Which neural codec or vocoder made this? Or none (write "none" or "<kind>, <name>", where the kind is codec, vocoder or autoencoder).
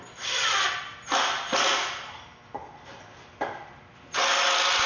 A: none